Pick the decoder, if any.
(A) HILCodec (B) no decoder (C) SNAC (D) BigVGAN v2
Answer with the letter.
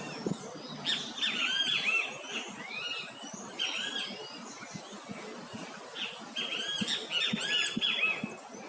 B